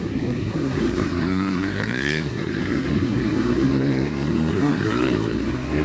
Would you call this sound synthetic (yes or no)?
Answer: yes